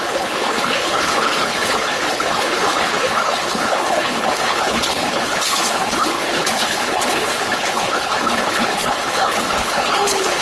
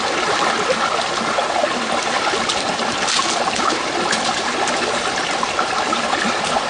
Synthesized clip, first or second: first